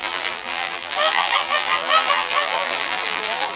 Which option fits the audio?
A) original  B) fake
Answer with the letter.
B